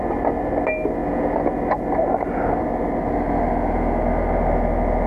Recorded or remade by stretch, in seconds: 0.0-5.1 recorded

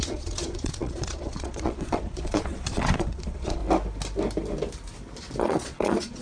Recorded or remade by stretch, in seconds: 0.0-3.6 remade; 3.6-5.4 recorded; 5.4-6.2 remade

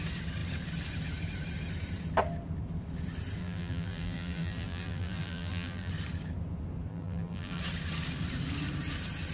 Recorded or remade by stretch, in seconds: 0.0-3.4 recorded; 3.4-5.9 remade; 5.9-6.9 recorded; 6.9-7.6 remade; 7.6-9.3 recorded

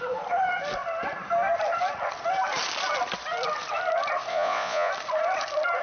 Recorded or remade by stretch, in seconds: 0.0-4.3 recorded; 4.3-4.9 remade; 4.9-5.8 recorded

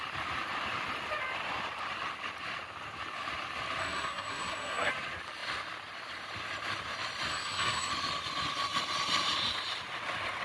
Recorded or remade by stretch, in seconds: 0.0-3.8 recorded; 3.8-4.9 remade; 4.9-7.3 recorded; 7.3-7.9 remade; 7.9-10.4 recorded

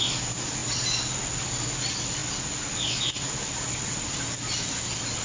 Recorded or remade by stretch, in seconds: 0.0-5.2 recorded